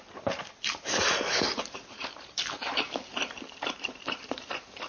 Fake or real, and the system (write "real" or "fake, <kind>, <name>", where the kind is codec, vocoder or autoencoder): fake, vocoder, BigVGAN v2